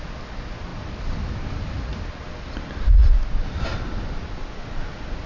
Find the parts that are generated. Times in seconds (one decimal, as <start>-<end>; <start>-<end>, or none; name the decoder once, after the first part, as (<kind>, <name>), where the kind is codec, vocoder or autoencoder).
none